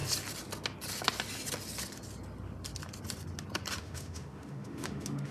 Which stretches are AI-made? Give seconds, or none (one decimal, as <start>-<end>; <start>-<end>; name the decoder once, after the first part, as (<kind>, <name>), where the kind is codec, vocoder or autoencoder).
3.8-5.3 (autoencoder, DAC-VAE)